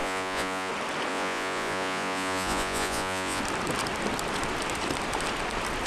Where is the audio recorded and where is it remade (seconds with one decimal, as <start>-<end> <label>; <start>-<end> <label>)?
0.0-0.7 remade; 0.7-1.1 recorded; 1.1-3.4 remade; 3.4-5.9 recorded